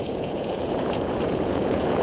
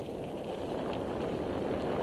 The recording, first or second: second